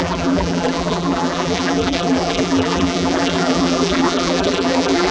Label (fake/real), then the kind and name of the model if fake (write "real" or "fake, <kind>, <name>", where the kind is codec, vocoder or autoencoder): fake, vocoder, BigVGAN v2